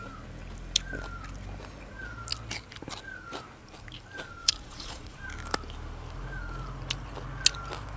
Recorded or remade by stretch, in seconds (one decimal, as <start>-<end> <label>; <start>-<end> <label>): 0.0-4.4 recorded; 4.4-5.2 remade; 5.2-8.0 recorded